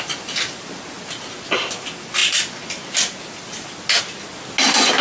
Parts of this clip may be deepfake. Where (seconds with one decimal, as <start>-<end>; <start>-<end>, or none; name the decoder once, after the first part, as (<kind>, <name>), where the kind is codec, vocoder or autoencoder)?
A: none